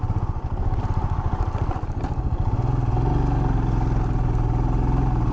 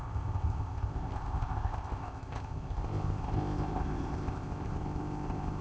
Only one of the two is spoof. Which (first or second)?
second